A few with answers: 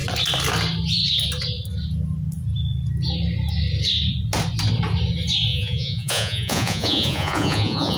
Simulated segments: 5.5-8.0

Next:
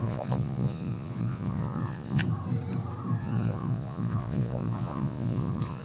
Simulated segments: 0.0-2.2; 3.2-5.8